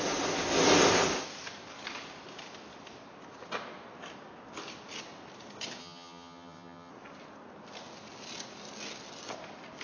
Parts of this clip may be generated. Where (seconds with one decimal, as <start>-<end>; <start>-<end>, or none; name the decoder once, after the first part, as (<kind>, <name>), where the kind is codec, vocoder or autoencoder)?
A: 5.8-6.9 (vocoder, HiFi-GAN)